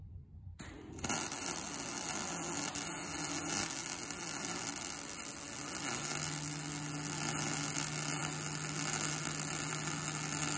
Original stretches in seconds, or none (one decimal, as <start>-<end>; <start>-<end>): 0.0-10.6